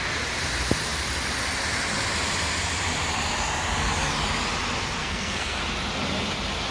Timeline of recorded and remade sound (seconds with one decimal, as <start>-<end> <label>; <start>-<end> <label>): 0.0-5.0 recorded; 5.0-5.6 remade; 5.6-6.7 recorded